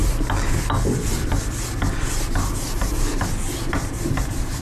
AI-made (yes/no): no